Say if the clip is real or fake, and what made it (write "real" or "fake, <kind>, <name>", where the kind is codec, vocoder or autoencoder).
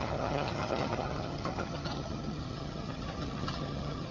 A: fake, vocoder, HiFi-GAN